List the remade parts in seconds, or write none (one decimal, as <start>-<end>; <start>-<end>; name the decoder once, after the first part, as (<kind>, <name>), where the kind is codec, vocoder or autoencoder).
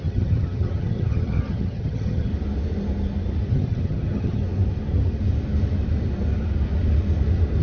0.0-2.3 (vocoder, HiFi-GAN); 3.5-4.4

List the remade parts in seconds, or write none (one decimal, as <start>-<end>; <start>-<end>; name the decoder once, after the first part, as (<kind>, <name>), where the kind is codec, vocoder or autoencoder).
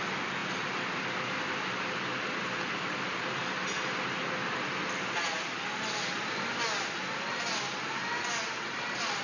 none